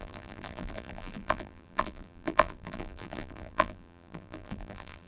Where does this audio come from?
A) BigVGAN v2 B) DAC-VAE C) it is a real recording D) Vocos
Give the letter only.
A